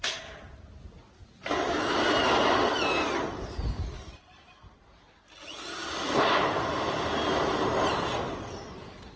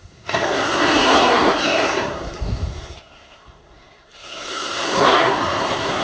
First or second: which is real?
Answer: first